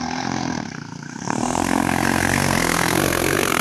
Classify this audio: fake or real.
fake